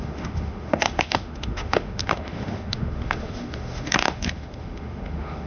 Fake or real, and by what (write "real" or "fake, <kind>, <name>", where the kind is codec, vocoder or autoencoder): fake, autoencoder, DAC-VAE